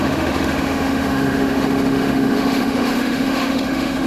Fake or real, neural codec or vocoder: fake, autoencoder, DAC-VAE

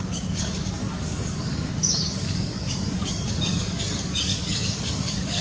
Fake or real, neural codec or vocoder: fake, codec, DAC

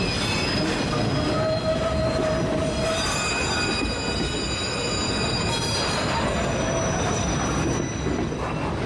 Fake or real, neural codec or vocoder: real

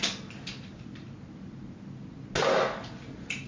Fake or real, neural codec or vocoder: real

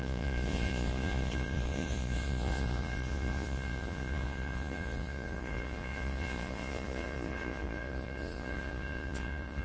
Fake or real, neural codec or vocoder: fake, vocoder, Vocos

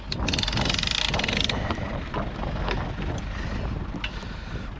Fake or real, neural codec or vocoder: real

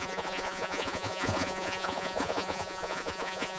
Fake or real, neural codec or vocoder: fake, vocoder, Vocos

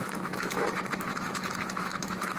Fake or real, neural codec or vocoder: fake, autoencoder, DAC-VAE